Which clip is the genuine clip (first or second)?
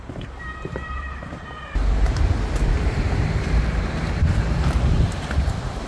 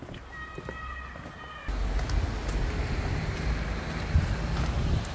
second